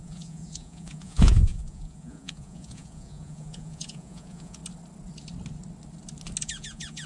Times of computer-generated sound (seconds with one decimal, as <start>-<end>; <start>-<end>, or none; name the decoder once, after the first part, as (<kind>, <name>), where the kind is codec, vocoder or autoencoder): 0.0-4.6 (vocoder, Vocos); 6.4-7.1